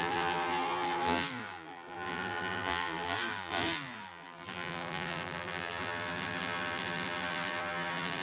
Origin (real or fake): fake